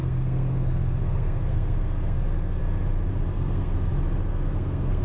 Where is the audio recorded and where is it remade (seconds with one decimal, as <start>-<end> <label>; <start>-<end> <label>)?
0.0-2.6 remade; 2.6-3.3 recorded; 3.3-3.9 remade; 3.9-4.3 recorded; 4.3-5.0 remade